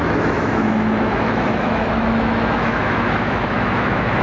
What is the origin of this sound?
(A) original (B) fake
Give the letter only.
B